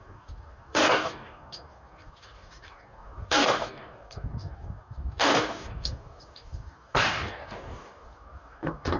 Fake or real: fake